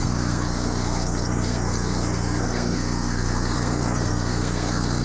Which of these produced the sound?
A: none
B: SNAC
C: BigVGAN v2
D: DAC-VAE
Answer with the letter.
B